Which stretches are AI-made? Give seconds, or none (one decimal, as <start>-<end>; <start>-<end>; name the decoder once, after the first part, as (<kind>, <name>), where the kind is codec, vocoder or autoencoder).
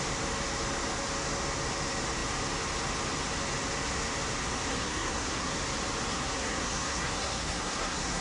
4.7-5.5 (codec, SNAC); 6.1-8.2